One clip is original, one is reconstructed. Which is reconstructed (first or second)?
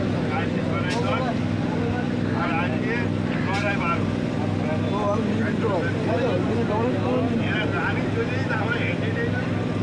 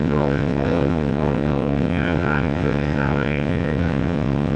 second